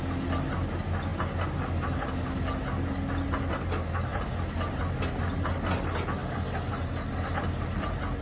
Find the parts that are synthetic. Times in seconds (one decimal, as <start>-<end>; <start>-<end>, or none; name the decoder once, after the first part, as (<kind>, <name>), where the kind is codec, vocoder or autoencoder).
none